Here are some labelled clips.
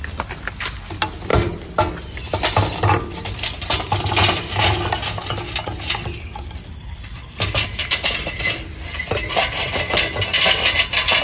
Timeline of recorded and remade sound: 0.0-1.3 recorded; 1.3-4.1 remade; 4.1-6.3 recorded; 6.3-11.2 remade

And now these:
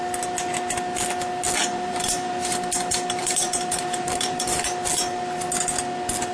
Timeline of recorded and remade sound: 0.0-1.6 recorded; 1.6-2.3 remade; 2.3-3.2 recorded; 3.2-4.6 remade; 4.6-6.3 recorded

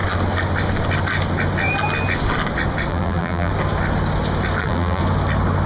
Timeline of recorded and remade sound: 0.0-2.9 recorded; 2.9-3.5 remade; 3.5-4.6 recorded; 4.6-5.0 remade; 5.0-5.7 recorded

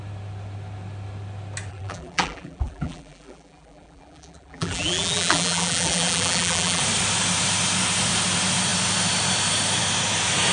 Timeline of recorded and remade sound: 0.0-1.7 recorded; 1.7-6.8 remade; 6.8-10.5 recorded